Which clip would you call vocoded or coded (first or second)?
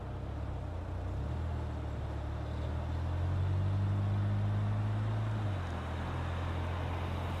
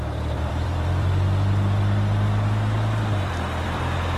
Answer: second